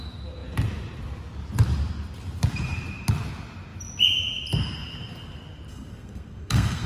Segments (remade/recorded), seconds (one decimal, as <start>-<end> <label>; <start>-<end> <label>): 0.0-5.7 recorded; 5.7-6.9 remade

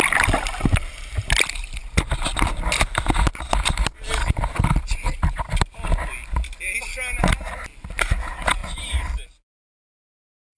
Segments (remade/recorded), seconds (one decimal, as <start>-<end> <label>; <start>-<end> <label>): 0.0-10.6 recorded

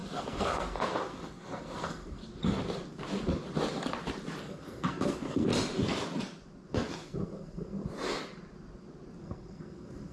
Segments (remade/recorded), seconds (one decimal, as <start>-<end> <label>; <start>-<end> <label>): 0.0-2.2 remade; 2.2-4.4 recorded; 4.4-5.5 remade; 5.5-6.7 recorded; 6.7-7.8 remade; 7.8-9.2 recorded; 9.2-10.1 remade

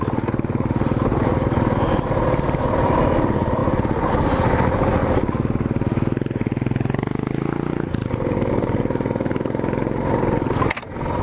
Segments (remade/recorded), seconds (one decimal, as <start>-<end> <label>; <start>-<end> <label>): 0.0-11.2 recorded